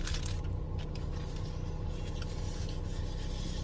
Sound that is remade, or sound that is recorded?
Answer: recorded